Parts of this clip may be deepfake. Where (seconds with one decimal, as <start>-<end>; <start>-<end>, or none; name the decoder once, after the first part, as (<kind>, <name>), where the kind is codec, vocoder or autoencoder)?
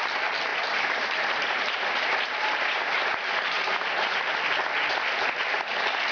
0.5-4.2 (vocoder, BigVGAN v2)